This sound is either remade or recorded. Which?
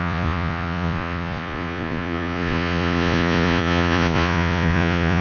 remade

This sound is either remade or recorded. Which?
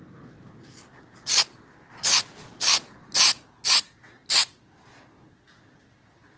recorded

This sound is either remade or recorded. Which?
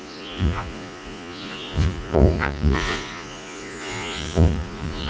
remade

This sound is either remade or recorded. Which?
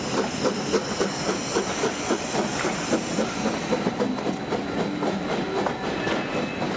recorded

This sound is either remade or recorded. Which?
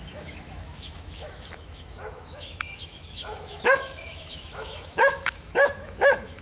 remade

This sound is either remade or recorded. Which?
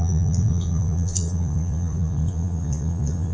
remade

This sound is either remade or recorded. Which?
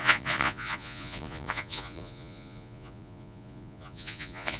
remade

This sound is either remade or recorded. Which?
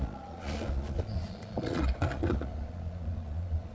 remade